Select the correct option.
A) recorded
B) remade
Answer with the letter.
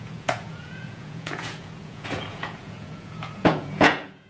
B